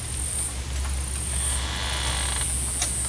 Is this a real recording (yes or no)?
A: yes